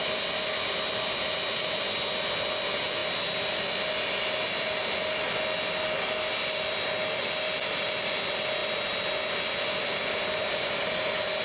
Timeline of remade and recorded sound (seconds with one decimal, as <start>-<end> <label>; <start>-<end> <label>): 0.0-11.4 recorded